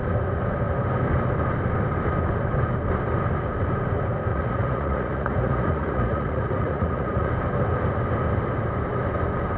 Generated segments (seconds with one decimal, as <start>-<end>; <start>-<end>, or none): 4.3-7.3